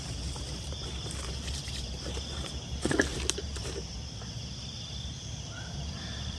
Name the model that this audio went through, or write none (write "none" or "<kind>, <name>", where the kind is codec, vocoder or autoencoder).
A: vocoder, BigVGAN v2